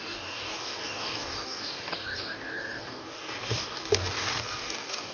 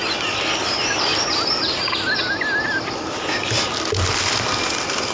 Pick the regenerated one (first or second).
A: first